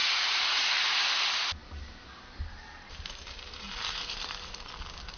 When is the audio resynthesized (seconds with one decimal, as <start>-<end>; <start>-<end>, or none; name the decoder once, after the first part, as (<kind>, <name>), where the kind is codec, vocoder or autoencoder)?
0.0-1.2 (vocoder, BigVGAN v2); 1.6-4.7